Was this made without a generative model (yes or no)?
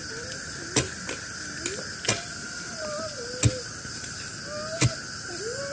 yes